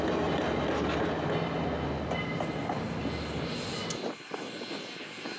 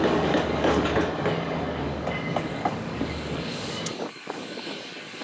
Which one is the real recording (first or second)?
first